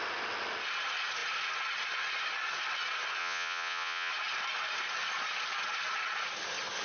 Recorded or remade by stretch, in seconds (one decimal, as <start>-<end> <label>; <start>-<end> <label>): 0.0-3.2 recorded; 3.2-4.1 remade; 4.1-6.8 recorded